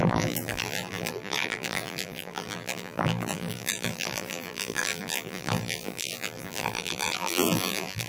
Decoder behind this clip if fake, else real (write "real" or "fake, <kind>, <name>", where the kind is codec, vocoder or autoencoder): fake, vocoder, BigVGAN v2